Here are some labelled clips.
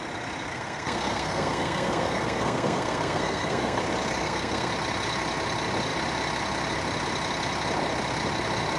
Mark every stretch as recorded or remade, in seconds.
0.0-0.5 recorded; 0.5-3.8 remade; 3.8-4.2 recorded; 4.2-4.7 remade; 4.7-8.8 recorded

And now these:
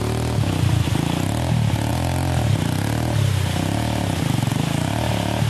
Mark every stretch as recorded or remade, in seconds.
0.0-5.5 recorded